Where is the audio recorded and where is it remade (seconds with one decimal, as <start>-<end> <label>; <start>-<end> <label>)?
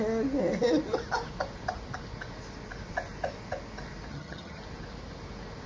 0.0-4.1 recorded; 4.1-4.6 remade; 4.6-5.7 recorded